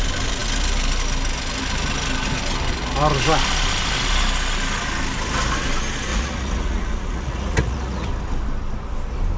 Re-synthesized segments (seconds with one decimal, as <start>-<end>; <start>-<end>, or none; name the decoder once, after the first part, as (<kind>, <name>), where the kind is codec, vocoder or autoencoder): 6.1-8.1 (vocoder, Vocos)